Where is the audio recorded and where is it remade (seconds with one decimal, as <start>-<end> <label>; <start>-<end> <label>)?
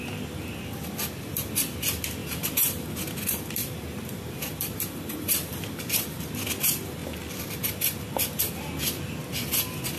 0.0-2.2 recorded; 2.2-3.0 remade; 3.0-3.6 recorded; 3.6-6.3 remade; 6.3-10.0 recorded